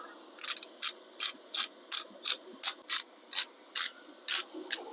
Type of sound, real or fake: real